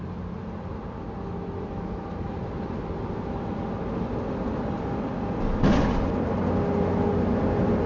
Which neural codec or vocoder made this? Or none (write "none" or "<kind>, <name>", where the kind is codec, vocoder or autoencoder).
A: none